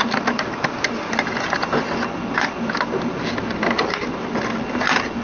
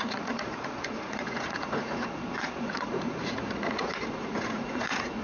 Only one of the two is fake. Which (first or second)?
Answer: second